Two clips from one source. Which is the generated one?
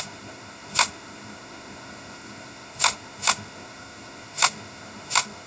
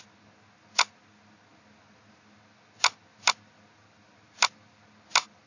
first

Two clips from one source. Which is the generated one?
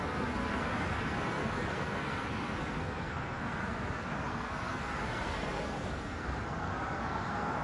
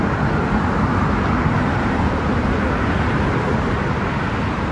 first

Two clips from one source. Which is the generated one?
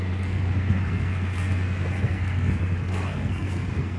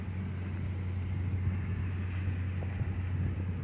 first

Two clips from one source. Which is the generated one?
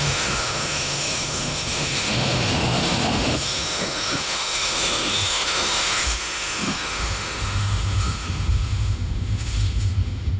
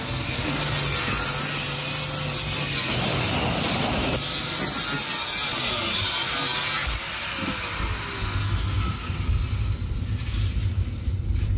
first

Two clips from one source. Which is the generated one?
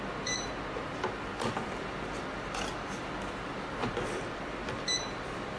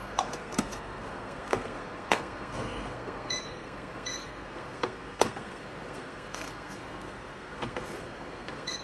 second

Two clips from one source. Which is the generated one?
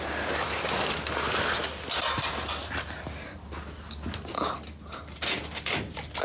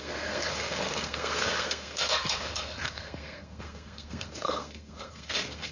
second